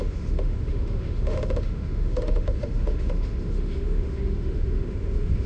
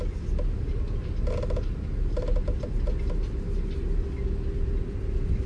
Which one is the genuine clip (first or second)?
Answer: second